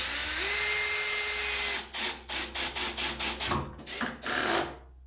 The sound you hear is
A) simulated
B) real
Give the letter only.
B